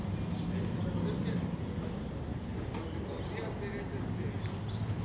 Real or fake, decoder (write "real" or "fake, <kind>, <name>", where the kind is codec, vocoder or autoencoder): real